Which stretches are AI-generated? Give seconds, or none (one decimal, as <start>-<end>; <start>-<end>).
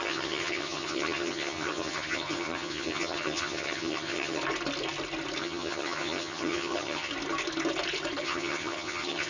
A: 0.0-4.4; 5.4-7.1; 8.2-9.3